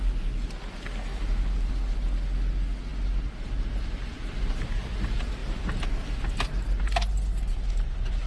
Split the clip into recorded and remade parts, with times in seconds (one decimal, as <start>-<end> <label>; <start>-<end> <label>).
0.0-1.1 recorded; 1.1-1.7 remade; 1.7-8.3 recorded